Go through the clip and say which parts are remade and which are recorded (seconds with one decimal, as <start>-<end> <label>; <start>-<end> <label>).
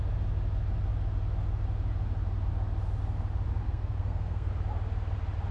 0.0-3.6 recorded; 3.6-4.5 remade; 4.5-5.5 recorded